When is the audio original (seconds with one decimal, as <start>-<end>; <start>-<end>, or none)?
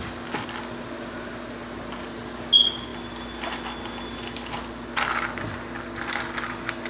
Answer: 0.0-6.9